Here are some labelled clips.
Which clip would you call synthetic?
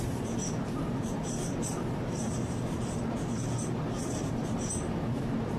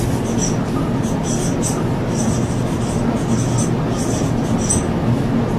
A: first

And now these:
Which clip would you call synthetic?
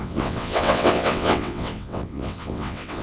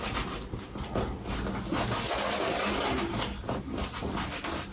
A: first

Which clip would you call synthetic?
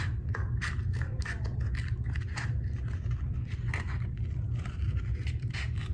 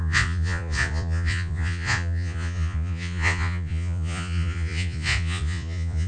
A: second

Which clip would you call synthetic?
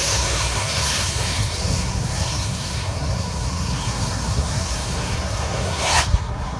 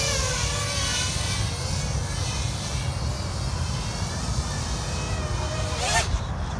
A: first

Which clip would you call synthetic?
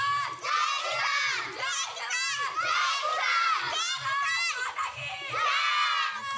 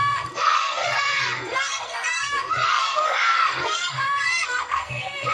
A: second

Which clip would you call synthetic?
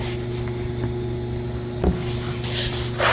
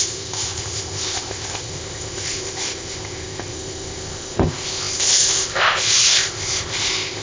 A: second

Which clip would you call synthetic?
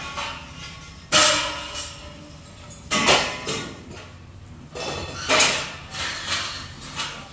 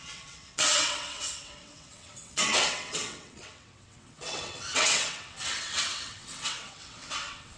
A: second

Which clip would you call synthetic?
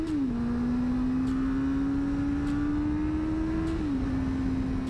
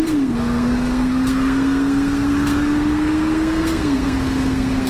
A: second